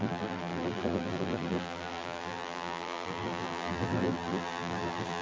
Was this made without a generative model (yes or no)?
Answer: no